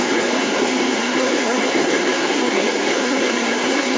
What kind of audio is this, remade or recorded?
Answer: remade